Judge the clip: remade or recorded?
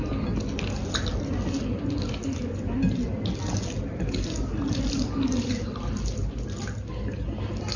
recorded